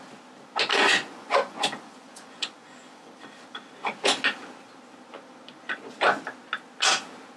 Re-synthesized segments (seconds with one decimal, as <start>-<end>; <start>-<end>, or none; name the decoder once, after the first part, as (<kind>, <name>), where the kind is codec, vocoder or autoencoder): 0.7-3.1 (vocoder, Vocos)